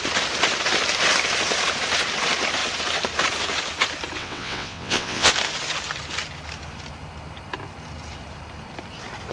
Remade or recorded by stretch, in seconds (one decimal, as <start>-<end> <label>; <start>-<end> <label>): 0.0-4.2 recorded; 4.2-5.3 remade; 5.3-9.3 recorded